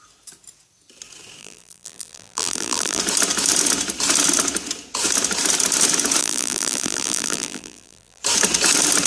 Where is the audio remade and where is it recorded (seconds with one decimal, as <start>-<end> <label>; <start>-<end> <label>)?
0.0-1.4 recorded; 1.4-3.0 remade; 3.0-6.2 recorded; 6.2-8.2 remade; 8.2-9.1 recorded